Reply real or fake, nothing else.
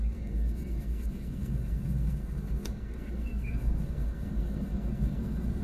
fake